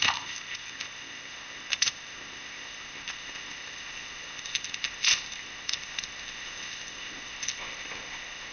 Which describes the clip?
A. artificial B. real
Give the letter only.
A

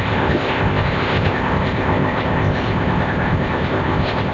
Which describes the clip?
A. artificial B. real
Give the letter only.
A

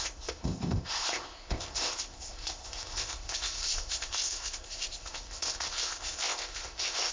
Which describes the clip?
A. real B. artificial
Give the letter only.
B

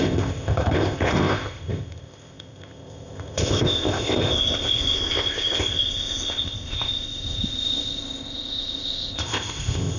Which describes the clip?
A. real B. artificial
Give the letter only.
B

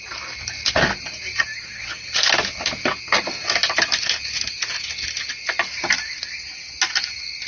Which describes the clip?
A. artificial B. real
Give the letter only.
B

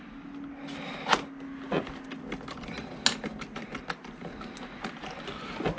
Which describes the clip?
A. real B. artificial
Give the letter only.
A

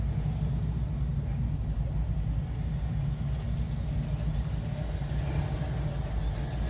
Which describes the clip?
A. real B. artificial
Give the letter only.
A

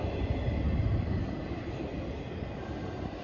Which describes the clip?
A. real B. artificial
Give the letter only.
A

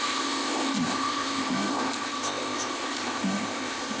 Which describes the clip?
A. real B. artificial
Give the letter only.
B